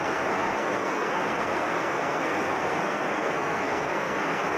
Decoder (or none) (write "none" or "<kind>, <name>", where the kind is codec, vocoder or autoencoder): codec, SNAC